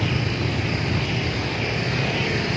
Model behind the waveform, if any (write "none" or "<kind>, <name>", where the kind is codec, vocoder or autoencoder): none